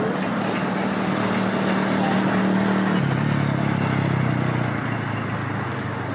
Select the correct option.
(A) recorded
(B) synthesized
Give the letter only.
A